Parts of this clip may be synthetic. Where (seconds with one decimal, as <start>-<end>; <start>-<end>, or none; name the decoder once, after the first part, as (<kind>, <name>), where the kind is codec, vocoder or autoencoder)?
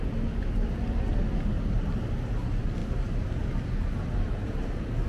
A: none